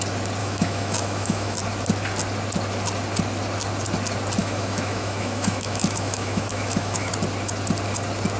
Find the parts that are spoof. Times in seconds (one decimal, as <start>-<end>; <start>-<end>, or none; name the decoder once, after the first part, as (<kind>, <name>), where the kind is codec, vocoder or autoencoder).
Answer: 0.4-1.6 (autoencoder, DAC-VAE); 4.4-7.1